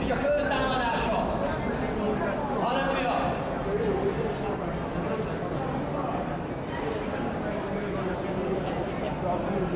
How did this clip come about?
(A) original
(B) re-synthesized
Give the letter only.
A